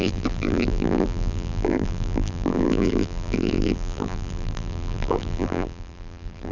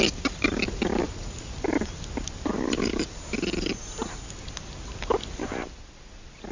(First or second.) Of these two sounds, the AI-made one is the first